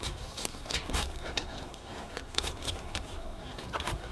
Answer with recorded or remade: remade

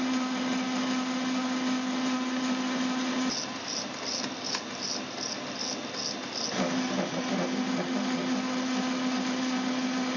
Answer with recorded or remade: recorded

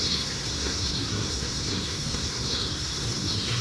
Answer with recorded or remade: remade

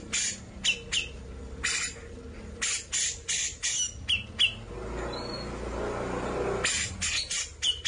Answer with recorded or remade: recorded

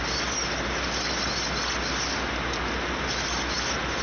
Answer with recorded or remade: recorded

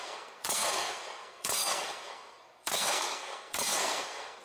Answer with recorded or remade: remade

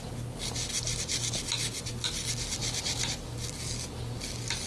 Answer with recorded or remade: recorded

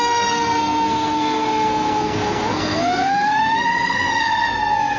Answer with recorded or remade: remade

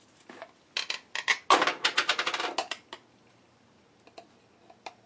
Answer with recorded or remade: recorded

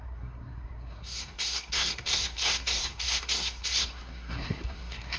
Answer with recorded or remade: remade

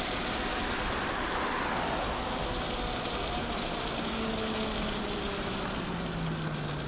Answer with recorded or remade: recorded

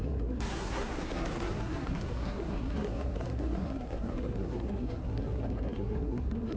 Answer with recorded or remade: remade